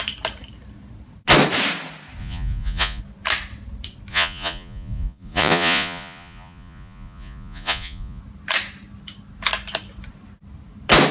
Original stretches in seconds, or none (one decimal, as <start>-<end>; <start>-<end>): 0.0-2.2; 3.0-4.1; 8.2-11.1